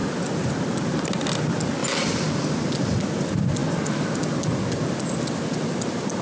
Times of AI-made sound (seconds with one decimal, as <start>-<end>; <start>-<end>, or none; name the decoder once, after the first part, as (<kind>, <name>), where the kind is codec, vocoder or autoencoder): 0.5-1.8 (vocoder, BigVGAN v2); 2.4-6.2